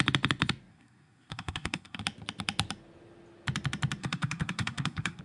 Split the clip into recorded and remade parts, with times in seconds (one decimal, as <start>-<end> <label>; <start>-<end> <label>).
0.0-0.7 recorded; 0.7-2.0 remade; 2.0-4.0 recorded; 4.0-5.2 remade

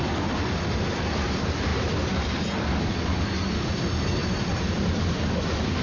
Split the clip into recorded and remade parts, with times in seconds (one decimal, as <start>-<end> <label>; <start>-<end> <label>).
0.0-5.8 recorded

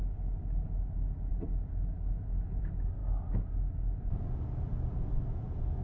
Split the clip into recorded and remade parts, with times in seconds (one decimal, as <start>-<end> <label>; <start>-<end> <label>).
0.0-5.8 recorded

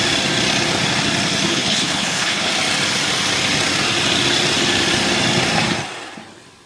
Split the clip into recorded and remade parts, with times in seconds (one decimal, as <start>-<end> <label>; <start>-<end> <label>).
0.0-1.5 recorded; 1.5-2.5 remade; 2.5-6.7 recorded

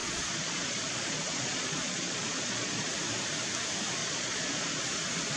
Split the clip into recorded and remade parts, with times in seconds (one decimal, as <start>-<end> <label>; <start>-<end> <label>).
0.0-2.9 remade; 2.9-4.0 recorded; 4.0-4.8 remade; 4.8-5.4 recorded

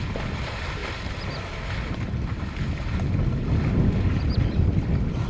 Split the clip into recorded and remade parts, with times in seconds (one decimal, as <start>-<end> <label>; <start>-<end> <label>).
0.0-5.3 recorded